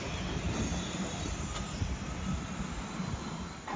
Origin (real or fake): real